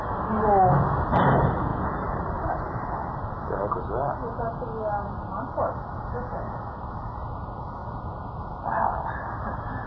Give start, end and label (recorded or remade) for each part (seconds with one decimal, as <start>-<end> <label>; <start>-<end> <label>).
0.0-9.9 recorded